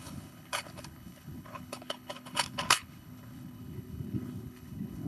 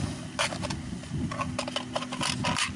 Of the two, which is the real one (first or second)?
second